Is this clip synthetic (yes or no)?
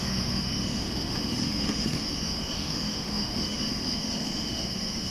yes